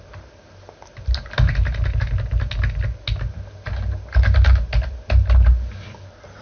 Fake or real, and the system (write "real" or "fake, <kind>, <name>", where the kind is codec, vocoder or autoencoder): real